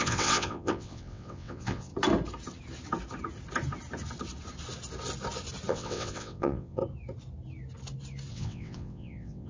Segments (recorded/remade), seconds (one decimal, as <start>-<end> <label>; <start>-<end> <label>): 0.0-1.9 remade; 1.9-5.7 recorded; 5.7-6.8 remade; 6.8-8.3 recorded; 8.3-9.5 remade